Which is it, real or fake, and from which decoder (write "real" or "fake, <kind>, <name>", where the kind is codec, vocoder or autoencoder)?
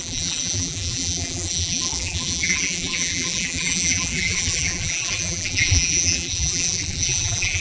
fake, vocoder, BigVGAN v2